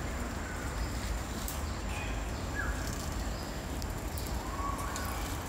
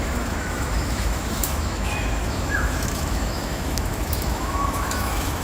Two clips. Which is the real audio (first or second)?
first